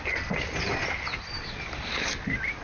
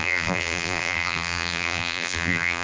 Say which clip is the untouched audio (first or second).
first